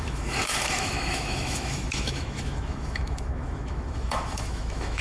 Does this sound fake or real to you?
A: fake